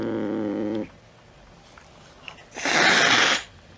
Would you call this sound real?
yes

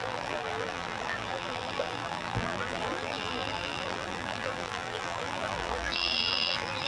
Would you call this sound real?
no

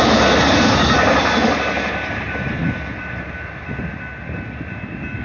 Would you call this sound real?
yes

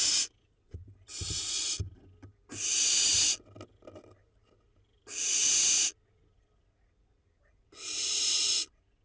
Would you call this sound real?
yes